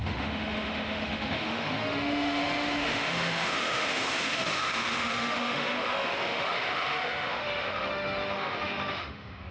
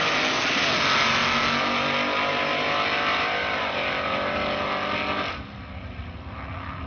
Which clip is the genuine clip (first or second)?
second